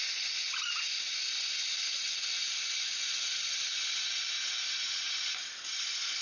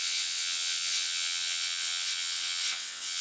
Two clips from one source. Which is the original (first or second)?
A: first